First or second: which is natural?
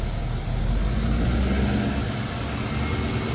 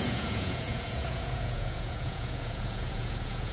first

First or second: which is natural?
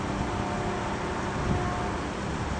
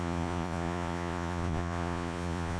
first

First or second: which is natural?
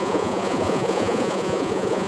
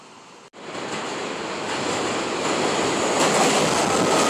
second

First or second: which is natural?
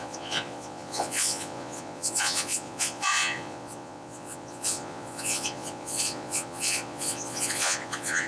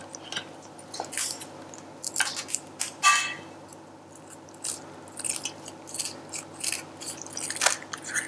second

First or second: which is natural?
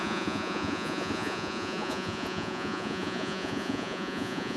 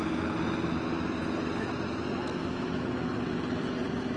second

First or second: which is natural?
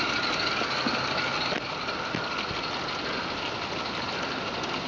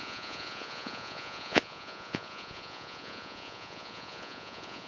first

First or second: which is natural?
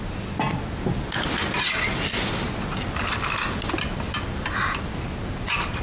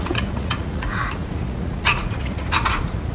first